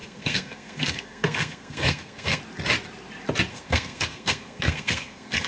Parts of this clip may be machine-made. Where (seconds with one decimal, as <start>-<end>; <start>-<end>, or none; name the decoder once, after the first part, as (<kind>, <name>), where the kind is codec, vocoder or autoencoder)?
0.0-2.4 (codec, SNAC); 3.5-5.5